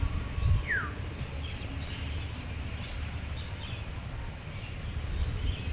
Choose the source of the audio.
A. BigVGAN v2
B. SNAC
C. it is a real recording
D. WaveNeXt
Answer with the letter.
C